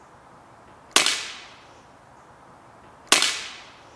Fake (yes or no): no